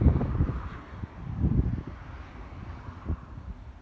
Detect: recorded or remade recorded